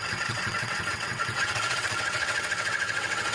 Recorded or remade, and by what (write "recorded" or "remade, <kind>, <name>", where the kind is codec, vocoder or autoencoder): remade, vocoder, WaveNeXt